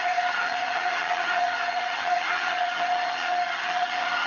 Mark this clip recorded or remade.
remade